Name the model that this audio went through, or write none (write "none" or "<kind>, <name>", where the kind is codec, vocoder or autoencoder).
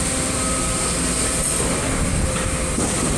none